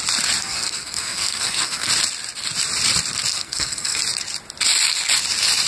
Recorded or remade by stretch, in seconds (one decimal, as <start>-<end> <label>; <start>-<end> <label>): 0.0-0.4 recorded; 0.4-1.9 remade; 1.9-3.3 recorded; 3.3-4.0 remade; 4.0-5.7 recorded